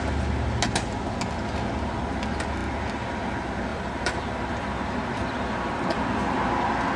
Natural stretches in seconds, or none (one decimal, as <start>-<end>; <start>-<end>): 0.0-3.7; 6.4-7.0